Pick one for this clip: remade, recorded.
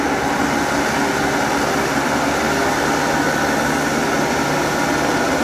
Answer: recorded